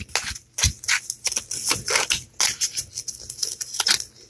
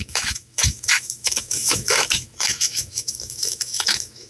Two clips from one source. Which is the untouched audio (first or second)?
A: first